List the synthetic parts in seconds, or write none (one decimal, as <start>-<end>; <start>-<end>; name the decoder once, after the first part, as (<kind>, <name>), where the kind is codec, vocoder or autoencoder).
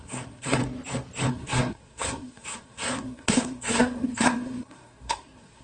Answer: 0.0-0.6 (codec, SNAC); 1.3-5.6